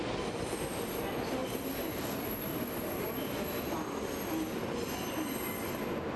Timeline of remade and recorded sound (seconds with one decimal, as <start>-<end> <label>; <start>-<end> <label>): 0.0-6.2 recorded